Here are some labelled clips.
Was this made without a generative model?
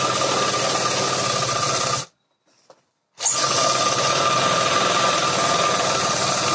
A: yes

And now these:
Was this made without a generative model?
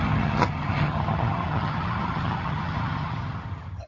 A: no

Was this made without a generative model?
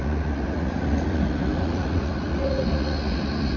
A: no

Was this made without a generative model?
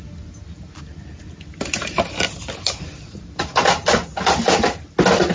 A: yes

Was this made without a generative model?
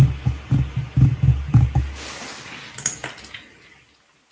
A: yes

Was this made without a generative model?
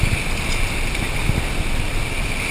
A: yes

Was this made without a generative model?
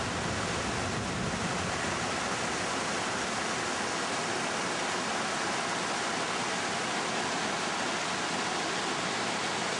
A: yes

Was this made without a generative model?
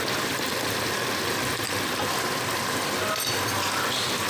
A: yes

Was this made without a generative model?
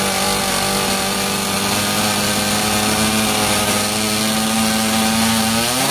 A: yes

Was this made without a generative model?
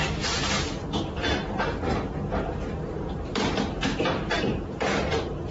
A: no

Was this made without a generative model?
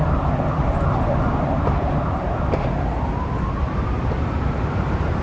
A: yes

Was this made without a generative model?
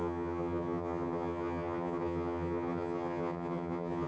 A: no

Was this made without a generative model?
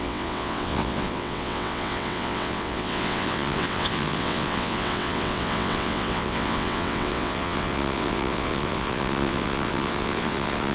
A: no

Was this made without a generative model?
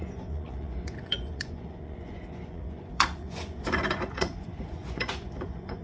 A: no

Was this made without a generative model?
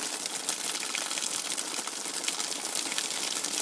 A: yes